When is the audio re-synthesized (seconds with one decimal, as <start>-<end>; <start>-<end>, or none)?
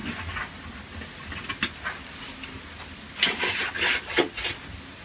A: none